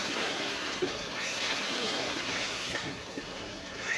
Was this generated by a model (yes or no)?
yes